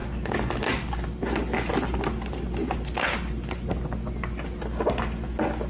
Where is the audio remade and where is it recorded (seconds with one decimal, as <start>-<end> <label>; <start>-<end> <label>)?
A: 0.0-5.7 recorded